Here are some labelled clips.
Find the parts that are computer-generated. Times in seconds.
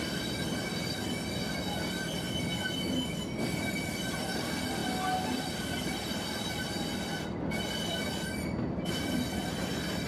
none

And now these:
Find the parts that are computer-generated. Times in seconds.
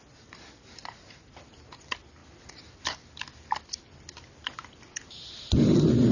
none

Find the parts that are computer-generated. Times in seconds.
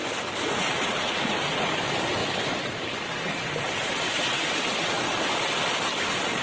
none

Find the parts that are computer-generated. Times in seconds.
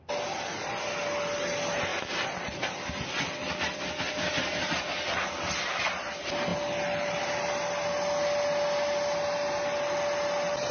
none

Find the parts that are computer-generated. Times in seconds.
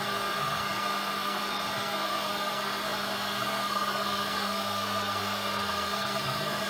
0.0-6.7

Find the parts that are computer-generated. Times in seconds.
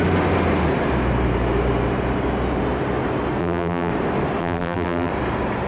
3.4-3.9; 4.4-5.1